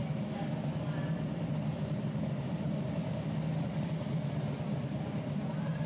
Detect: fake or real real